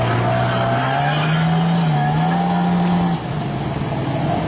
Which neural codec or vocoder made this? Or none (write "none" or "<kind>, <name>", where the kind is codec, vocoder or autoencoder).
none